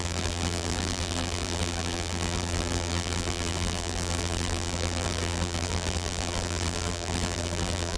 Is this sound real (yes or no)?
no